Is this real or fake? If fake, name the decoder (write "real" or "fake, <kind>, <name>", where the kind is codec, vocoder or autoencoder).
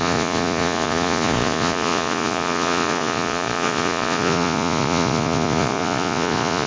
fake, vocoder, Vocos